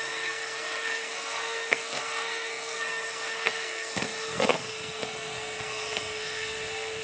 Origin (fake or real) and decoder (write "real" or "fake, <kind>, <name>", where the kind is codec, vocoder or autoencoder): fake, codec, SNAC